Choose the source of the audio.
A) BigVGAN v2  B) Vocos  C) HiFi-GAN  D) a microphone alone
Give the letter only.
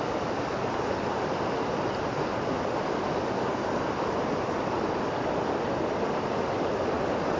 D